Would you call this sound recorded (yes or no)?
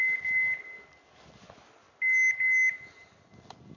yes